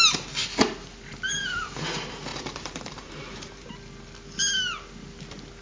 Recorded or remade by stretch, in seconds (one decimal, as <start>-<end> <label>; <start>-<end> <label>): 0.0-2.3 recorded; 2.3-3.7 remade; 3.7-5.6 recorded